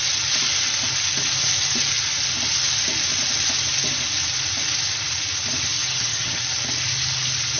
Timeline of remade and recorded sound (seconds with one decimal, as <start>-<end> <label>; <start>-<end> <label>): 0.0-5.8 recorded; 5.8-6.4 remade; 6.4-7.6 recorded